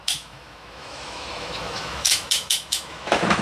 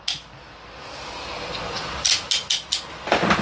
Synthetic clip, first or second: first